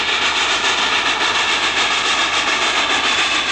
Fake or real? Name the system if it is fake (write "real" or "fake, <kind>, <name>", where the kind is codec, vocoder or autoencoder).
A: fake, vocoder, BigVGAN v2